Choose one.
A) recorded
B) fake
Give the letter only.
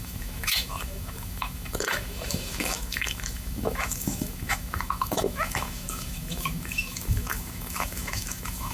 B